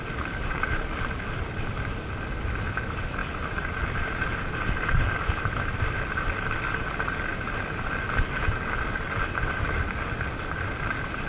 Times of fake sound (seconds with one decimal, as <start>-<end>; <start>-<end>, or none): none